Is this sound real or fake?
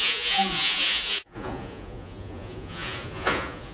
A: fake